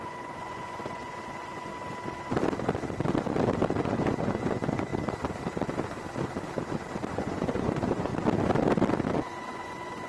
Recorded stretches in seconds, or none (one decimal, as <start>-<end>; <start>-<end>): 1.7-3.8; 4.9-7.1; 8.1-9.1